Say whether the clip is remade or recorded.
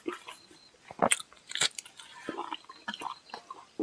recorded